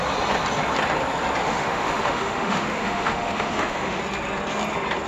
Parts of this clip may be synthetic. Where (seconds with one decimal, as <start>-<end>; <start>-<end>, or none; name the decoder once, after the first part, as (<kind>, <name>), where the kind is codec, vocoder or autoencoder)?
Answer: 1.4-4.0 (autoencoder, DAC-VAE)